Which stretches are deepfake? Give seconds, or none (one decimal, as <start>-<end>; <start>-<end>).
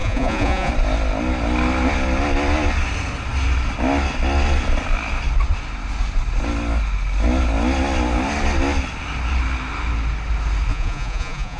0.0-0.7; 10.7-11.6